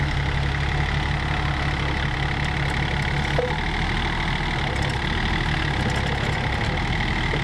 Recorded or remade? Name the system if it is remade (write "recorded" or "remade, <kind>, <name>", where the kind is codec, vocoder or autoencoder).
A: recorded